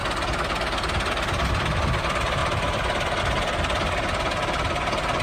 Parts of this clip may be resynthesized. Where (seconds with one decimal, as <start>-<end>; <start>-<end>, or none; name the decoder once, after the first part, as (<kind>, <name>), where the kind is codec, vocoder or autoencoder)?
none